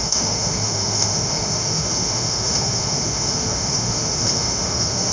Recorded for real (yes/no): no